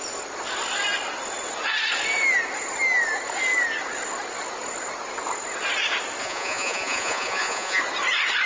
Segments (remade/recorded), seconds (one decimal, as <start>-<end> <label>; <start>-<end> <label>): 0.0-6.2 recorded; 6.2-7.8 remade; 7.8-8.5 recorded